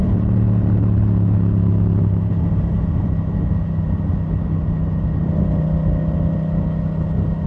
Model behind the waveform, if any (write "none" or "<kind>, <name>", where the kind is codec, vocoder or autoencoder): none